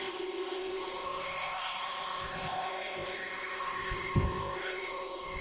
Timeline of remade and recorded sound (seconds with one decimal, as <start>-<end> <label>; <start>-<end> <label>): 0.0-5.4 remade